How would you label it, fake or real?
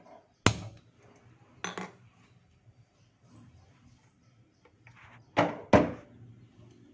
real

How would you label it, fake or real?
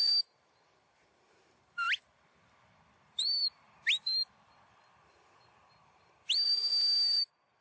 fake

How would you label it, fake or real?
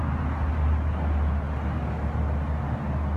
real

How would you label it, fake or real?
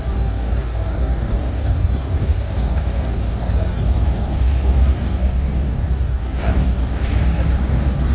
fake